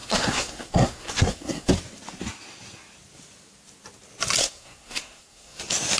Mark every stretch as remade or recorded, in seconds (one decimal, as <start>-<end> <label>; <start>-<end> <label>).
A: 0.0-1.7 remade; 1.7-4.4 recorded; 4.4-5.6 remade; 5.6-6.0 recorded